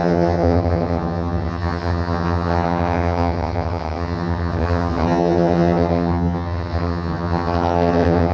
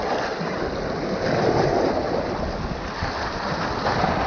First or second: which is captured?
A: second